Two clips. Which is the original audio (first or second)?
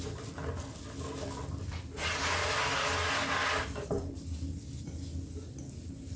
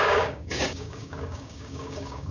first